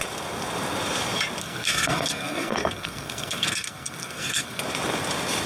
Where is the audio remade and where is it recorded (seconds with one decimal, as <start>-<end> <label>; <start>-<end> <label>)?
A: 0.0-1.4 recorded; 1.4-4.6 remade; 4.6-5.5 recorded